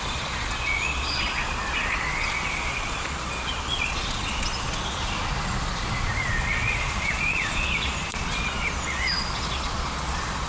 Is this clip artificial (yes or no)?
yes